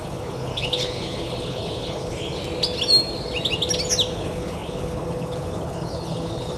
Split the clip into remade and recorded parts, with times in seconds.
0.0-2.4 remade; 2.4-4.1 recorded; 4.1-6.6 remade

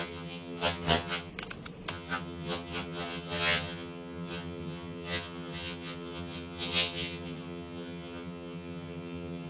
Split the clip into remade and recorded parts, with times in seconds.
0.0-1.3 remade; 1.3-1.9 recorded; 1.9-9.5 remade

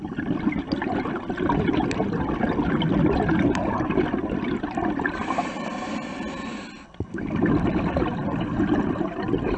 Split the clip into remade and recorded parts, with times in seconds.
0.0-9.6 recorded